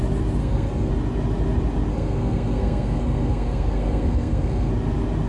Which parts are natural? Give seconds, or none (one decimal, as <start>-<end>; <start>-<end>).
0.0-0.4; 0.9-1.9; 4.7-5.3